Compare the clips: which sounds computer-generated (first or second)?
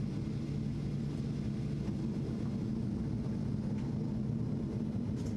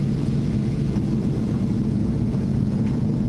second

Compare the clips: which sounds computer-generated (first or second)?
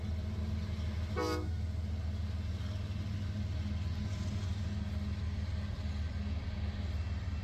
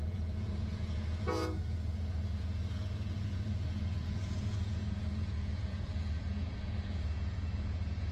second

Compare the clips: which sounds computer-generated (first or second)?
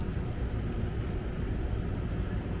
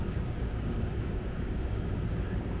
second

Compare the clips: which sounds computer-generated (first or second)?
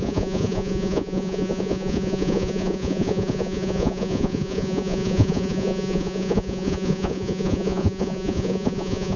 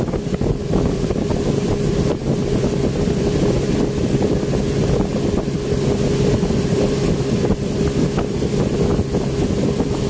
first